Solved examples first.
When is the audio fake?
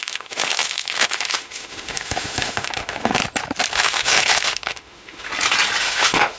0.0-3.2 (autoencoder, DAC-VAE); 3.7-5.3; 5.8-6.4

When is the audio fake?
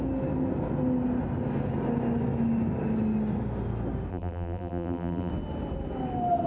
4.1-5.3 (vocoder, BigVGAN v2)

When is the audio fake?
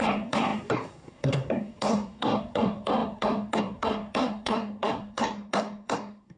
0.0-6.4 (codec, SNAC)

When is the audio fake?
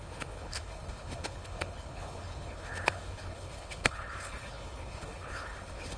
0.0-6.0 (codec, HILCodec)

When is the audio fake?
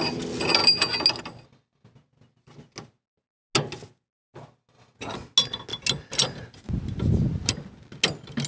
none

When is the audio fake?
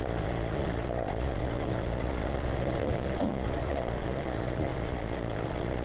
0.0-5.8 (vocoder, Vocos)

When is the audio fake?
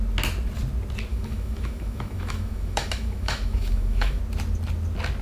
1.1-4.2 (autoencoder, DAC-VAE)